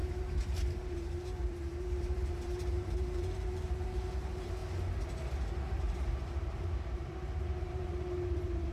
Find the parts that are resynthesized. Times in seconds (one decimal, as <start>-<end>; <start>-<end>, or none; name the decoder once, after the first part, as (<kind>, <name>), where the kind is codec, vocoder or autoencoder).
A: 0.0-4.6 (vocoder, BigVGAN v2); 5.8-8.7